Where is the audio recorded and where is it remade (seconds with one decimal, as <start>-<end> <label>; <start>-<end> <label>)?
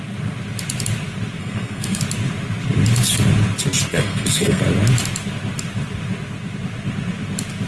0.0-1.4 recorded; 1.4-2.0 remade; 2.0-3.9 recorded; 3.9-4.6 remade; 4.6-7.7 recorded